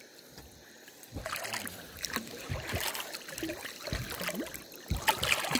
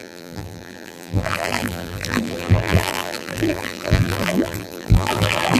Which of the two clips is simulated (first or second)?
second